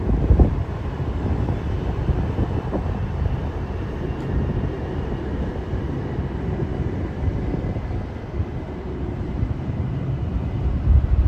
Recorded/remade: remade